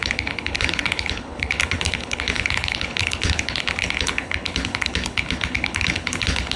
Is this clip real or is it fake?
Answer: fake